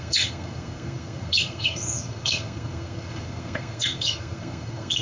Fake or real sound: fake